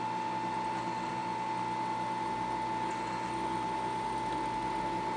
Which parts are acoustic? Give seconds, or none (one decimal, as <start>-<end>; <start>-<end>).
0.0-5.2